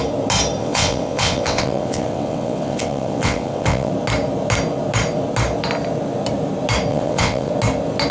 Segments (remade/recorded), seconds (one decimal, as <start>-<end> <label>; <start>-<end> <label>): 0.0-0.6 recorded; 0.6-3.9 remade; 3.9-6.9 recorded; 6.9-7.5 remade; 7.5-8.1 recorded